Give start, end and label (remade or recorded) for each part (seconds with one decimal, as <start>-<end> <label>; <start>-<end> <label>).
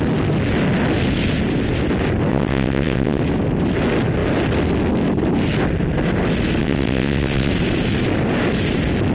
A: 0.0-2.3 recorded; 2.3-3.2 remade; 3.2-6.6 recorded; 6.6-7.5 remade; 7.5-9.1 recorded